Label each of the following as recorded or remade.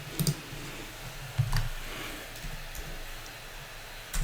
recorded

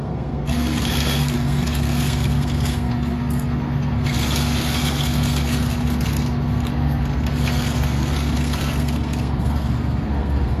remade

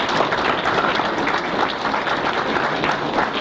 recorded